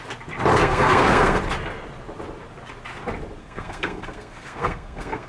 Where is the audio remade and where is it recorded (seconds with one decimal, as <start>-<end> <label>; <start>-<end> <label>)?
0.0-0.5 recorded; 0.5-1.4 remade; 1.4-3.4 recorded; 3.4-5.3 remade